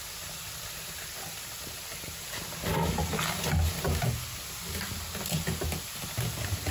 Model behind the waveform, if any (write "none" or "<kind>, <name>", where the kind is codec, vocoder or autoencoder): none